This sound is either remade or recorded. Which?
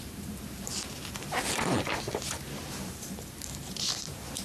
remade